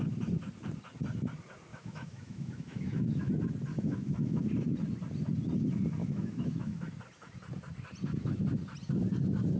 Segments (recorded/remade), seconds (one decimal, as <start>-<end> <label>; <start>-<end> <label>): 0.0-1.7 recorded; 1.7-3.3 remade; 3.3-3.7 recorded; 3.7-4.4 remade; 4.4-6.0 recorded; 6.0-6.9 remade; 6.9-9.6 recorded